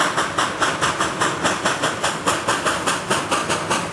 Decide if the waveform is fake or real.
real